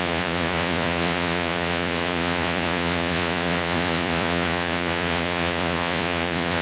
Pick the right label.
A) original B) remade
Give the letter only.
B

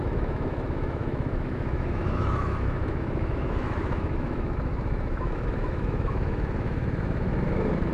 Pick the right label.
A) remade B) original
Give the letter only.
A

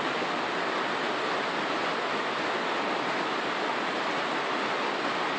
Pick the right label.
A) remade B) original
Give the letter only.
B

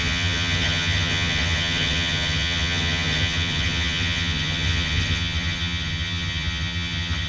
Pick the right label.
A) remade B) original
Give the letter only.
A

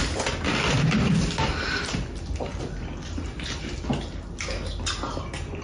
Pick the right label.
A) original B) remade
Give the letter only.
A